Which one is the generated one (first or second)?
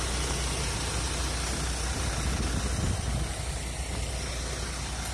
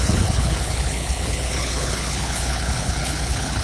second